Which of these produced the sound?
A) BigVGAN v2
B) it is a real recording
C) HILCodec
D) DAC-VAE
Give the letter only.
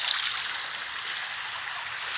B